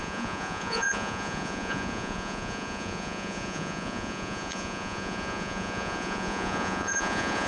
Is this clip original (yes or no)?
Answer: no